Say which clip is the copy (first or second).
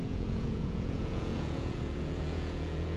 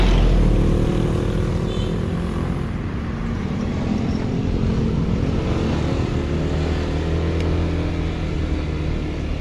first